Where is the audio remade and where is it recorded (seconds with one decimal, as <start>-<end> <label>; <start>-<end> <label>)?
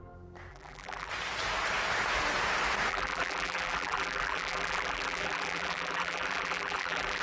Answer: 0.0-0.5 recorded; 0.5-1.1 remade; 1.1-2.9 recorded; 2.9-7.2 remade